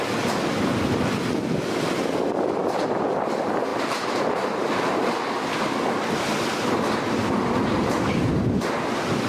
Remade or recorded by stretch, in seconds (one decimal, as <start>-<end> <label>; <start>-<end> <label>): 0.0-3.7 recorded; 3.7-5.1 remade; 5.1-7.2 recorded; 7.2-8.1 remade; 8.1-9.3 recorded

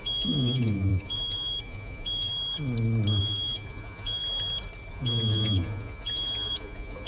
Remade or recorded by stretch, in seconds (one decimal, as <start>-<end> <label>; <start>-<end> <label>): 0.0-2.3 remade; 2.3-3.2 recorded; 3.2-4.2 remade; 4.2-4.9 recorded; 4.9-7.1 remade

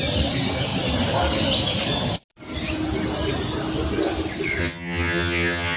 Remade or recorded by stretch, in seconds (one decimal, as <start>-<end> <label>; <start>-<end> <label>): 0.0-4.6 recorded; 4.6-5.8 remade

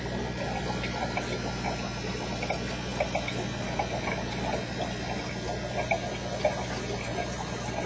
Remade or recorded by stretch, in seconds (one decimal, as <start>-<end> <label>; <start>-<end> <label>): 0.0-7.9 recorded

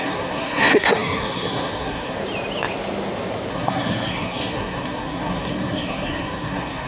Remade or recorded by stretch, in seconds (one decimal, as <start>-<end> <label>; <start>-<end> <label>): 0.0-2.2 remade; 2.2-3.5 recorded; 3.5-6.9 remade

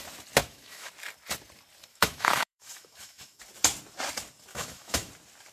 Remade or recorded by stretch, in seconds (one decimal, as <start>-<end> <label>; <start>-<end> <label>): 0.0-0.4 recorded; 0.4-0.9 remade; 0.9-1.9 recorded; 1.9-3.4 remade; 3.4-4.5 recorded; 4.5-5.1 remade; 5.1-5.5 recorded

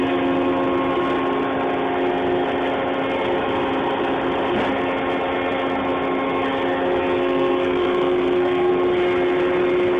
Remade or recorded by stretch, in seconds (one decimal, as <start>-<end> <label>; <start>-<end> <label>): 0.0-7.2 recorded; 7.2-8.7 remade; 8.7-10.0 recorded